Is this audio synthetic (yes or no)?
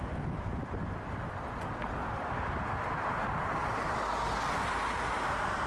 no